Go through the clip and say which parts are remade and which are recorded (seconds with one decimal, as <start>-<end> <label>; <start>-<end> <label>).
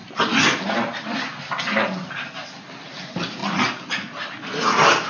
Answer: 0.0-5.1 recorded